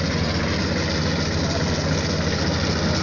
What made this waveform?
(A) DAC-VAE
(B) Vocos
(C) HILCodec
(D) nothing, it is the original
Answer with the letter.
D